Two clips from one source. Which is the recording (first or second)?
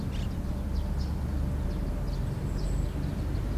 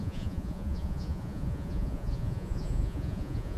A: first